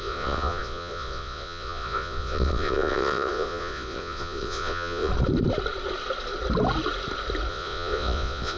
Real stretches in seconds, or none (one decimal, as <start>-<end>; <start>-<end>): 5.1-7.5